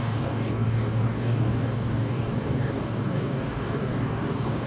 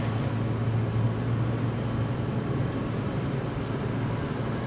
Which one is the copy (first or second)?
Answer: first